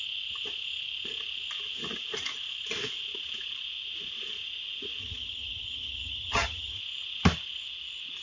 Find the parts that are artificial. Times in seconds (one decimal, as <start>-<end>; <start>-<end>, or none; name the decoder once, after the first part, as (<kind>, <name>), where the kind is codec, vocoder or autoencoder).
5.0-6.8 (vocoder, HiFi-GAN)